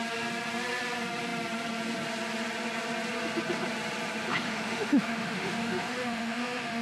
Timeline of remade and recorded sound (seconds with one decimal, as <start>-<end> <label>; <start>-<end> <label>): 0.0-4.3 recorded; 4.3-6.8 remade